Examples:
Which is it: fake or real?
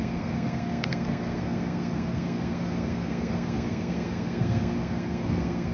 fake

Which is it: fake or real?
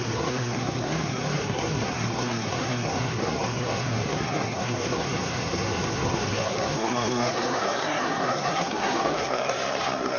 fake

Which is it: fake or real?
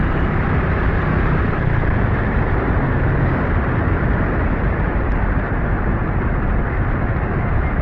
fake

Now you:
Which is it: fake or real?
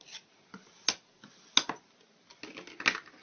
real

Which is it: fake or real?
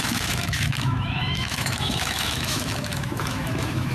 fake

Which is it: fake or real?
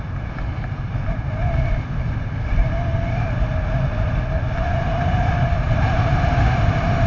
real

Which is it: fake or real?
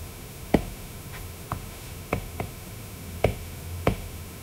fake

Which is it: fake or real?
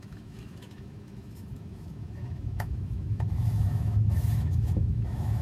fake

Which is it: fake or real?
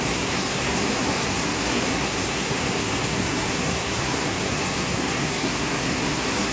fake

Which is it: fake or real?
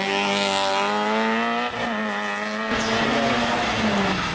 real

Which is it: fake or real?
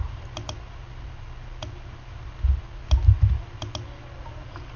real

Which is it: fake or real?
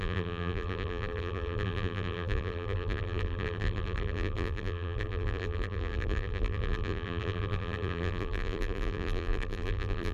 fake